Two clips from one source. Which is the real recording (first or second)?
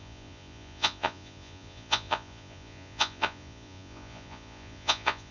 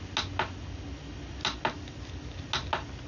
second